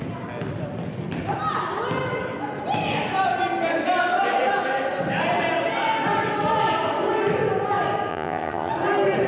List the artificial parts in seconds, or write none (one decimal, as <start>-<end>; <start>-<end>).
8.1-8.7